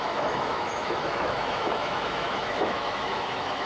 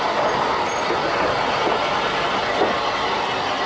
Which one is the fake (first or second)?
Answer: first